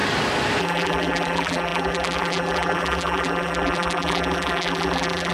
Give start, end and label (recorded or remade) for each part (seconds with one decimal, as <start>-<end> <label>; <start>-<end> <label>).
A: 0.0-0.6 recorded; 0.6-5.3 remade